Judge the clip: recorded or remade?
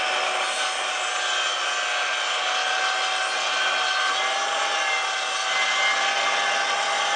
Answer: recorded